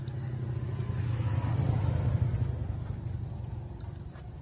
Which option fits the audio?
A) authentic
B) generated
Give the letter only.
A